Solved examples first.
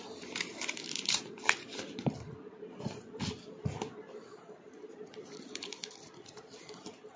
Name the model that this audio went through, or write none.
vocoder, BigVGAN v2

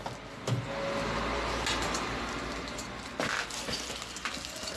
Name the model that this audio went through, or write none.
none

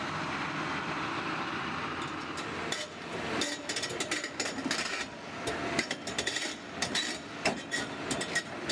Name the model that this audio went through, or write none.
vocoder, BigVGAN v2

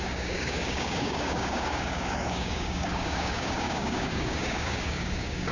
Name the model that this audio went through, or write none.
codec, DAC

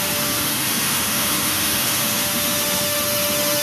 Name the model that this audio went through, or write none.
autoencoder, DAC-VAE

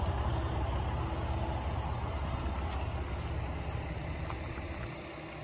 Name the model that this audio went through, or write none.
none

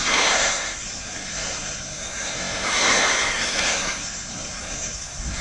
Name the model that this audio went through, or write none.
codec, SNAC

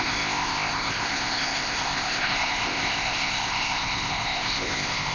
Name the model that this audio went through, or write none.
codec, ZipCodec